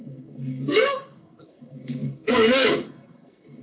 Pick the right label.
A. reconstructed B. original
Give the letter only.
A